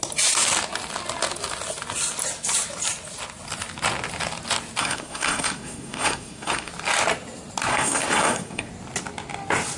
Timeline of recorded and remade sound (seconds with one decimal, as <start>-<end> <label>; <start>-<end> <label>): 0.0-4.8 recorded; 4.8-6.7 remade; 6.7-7.7 recorded; 7.7-8.7 remade; 8.7-9.8 recorded